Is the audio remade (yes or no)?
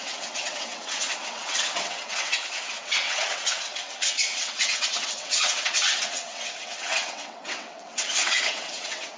yes